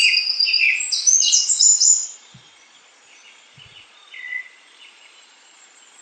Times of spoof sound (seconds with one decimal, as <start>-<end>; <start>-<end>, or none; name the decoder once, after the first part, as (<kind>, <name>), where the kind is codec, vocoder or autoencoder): 0.6-6.0 (vocoder, Vocos)